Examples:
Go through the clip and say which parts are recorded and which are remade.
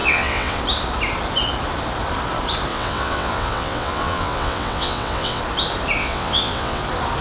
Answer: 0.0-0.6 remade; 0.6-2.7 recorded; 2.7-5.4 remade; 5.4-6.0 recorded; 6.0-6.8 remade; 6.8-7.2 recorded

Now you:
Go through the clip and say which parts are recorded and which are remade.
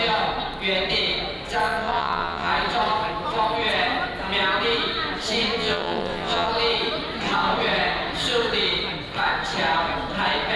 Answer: 0.0-1.6 recorded; 1.6-2.5 remade; 2.5-5.6 recorded; 5.6-6.5 remade; 6.5-10.6 recorded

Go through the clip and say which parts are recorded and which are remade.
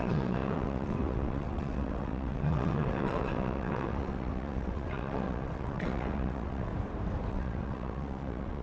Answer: 0.0-6.7 remade; 6.7-7.3 recorded; 7.3-8.6 remade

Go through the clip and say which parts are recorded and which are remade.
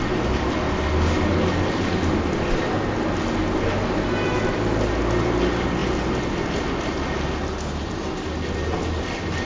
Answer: 0.0-9.4 recorded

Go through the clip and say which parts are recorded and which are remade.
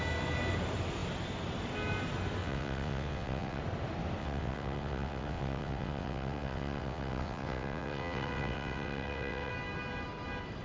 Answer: 0.0-2.4 recorded; 2.4-3.6 remade; 3.6-4.2 recorded; 4.2-9.5 remade; 9.5-10.6 recorded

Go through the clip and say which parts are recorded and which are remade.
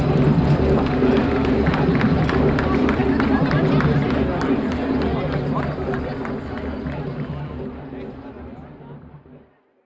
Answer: 0.0-9.8 recorded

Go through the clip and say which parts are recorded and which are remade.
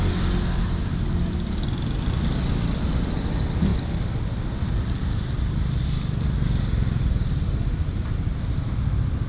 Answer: 0.0-9.3 recorded